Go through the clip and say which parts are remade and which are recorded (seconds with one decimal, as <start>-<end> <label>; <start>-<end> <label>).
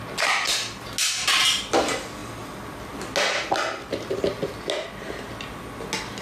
0.0-6.2 recorded